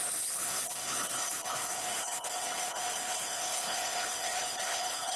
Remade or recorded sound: remade